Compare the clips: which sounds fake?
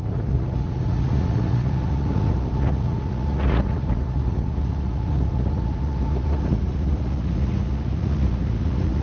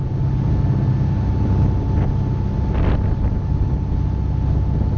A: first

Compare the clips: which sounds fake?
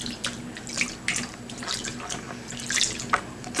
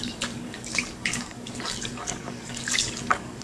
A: second